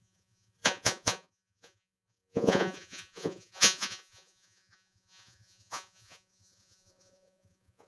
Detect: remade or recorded remade